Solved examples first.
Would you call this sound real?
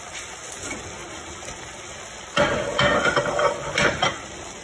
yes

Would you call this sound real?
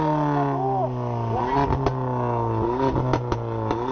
yes